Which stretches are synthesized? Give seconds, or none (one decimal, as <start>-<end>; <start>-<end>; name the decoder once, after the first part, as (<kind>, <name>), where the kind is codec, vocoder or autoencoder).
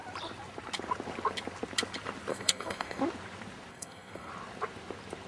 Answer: 2.3-3.0 (codec, SNAC); 3.7-4.3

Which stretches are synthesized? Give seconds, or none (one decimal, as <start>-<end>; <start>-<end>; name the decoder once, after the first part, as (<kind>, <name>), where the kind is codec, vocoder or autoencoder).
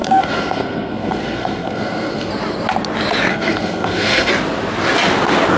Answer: 0.0-2.3 (codec, SNAC); 3.3-4.3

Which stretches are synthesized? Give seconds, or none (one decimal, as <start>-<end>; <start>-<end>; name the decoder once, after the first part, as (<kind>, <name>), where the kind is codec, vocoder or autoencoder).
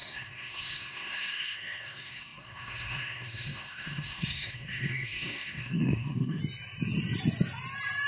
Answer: 0.0-6.4 (codec, SNAC)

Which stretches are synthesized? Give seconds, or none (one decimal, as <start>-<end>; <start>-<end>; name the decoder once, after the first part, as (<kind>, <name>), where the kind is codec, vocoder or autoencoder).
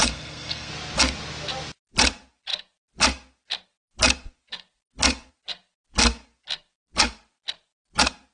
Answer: 0.0-0.7 (codec, SNAC)